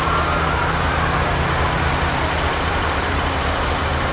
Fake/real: real